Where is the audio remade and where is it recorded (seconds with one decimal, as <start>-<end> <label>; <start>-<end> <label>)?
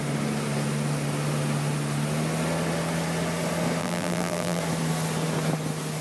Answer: 0.0-3.8 recorded; 3.8-4.6 remade; 4.6-6.0 recorded